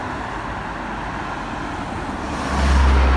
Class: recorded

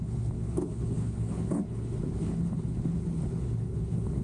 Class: remade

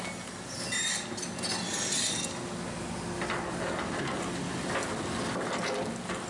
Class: recorded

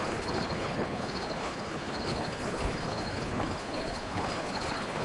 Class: remade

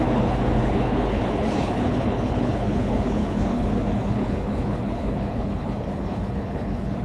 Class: remade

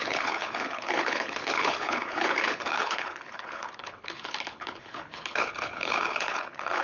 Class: remade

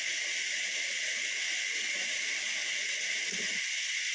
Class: recorded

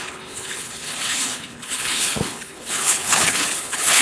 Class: remade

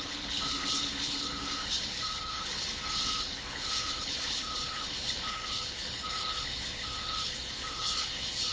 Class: remade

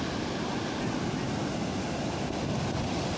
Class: recorded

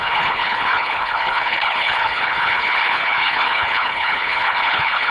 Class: remade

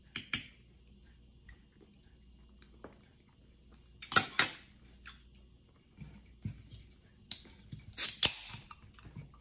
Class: recorded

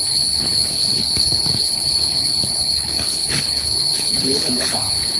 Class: remade